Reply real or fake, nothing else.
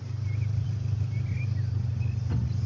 real